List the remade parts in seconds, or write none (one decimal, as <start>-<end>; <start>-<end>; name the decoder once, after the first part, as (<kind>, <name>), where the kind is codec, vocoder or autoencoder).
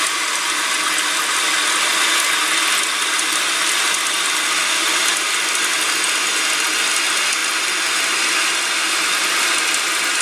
none